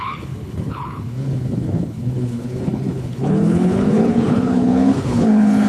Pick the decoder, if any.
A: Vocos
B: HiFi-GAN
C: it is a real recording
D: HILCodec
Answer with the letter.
D